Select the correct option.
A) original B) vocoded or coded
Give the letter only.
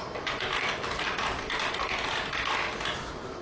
A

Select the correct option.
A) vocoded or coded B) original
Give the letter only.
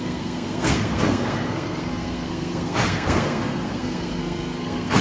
A